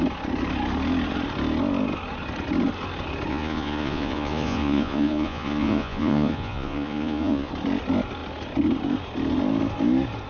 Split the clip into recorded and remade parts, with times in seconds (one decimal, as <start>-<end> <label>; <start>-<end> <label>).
0.0-3.3 recorded; 3.3-7.5 remade; 7.5-10.3 recorded